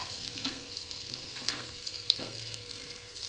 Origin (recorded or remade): remade